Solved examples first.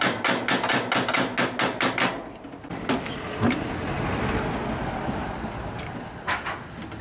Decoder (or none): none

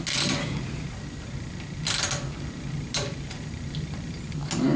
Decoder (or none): none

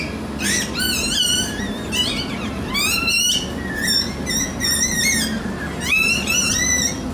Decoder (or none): none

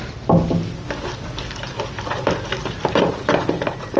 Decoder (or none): none